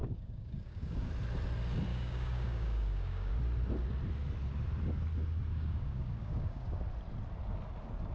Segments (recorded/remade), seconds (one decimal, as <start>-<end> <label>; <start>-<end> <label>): 0.0-1.1 remade; 1.1-1.9 recorded; 1.9-3.3 remade; 3.3-5.5 recorded; 5.5-6.8 remade; 6.8-8.1 recorded